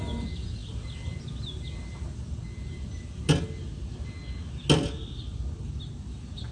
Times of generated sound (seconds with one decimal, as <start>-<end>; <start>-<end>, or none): none